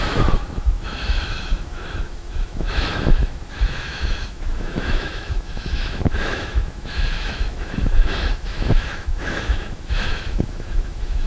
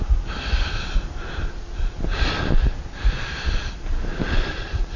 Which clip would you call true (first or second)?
second